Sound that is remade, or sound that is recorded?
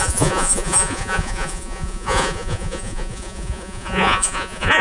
remade